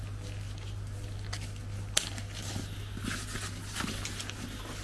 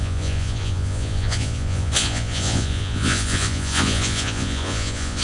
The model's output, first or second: second